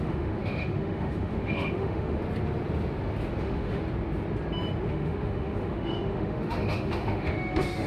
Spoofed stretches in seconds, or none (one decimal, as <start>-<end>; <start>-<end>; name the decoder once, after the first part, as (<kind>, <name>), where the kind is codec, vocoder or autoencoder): 0.0-2.2 (autoencoder, DAC-VAE); 3.4-3.8; 4.9-7.9